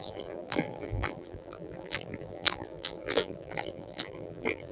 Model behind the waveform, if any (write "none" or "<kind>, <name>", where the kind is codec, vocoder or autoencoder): vocoder, BigVGAN v2